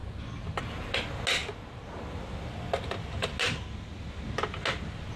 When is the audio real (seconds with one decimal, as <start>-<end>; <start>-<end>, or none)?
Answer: 0.0-5.2